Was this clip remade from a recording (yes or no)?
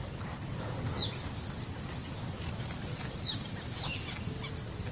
no